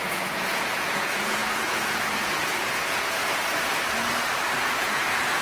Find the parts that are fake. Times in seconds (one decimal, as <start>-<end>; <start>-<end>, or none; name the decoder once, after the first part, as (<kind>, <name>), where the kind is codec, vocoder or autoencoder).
0.0-3.2 (vocoder, Vocos); 4.6-5.4